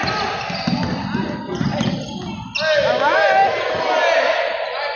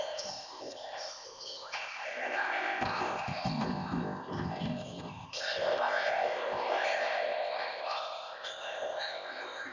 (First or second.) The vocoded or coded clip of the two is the second